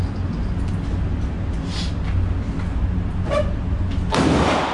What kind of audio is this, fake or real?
real